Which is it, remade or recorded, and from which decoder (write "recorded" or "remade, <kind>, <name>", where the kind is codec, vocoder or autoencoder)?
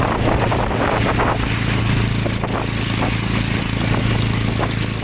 recorded